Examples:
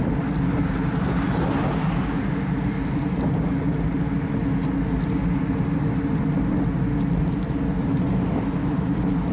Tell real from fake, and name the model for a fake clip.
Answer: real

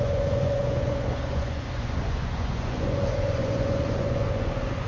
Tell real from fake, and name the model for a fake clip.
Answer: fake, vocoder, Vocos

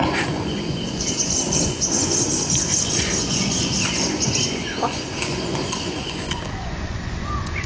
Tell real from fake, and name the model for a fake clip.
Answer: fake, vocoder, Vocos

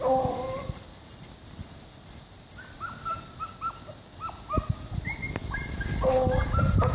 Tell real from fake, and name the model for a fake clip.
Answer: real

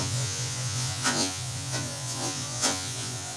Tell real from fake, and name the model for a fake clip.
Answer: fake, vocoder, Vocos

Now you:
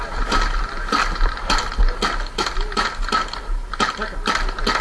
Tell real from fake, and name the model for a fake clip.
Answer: real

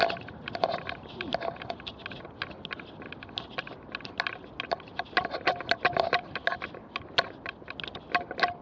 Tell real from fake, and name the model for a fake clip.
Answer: real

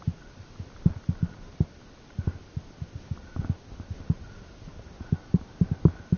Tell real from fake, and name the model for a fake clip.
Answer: real